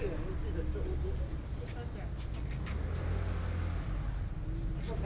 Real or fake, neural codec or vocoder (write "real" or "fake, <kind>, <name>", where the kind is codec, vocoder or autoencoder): real